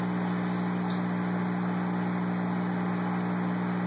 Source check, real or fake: real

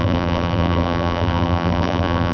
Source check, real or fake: fake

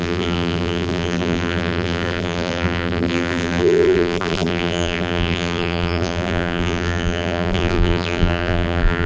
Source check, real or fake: fake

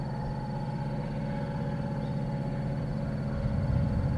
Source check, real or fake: real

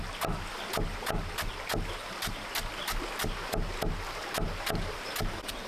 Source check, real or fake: real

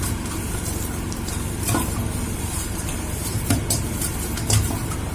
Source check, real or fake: fake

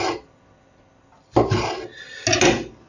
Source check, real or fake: real